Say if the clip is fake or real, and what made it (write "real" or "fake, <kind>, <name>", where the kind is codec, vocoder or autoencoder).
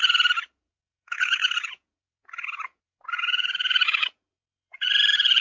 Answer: fake, vocoder, Vocos